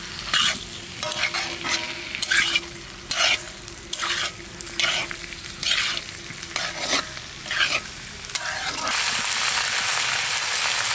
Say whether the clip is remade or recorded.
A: recorded